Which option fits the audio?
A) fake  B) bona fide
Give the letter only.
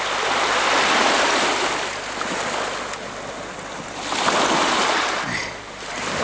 B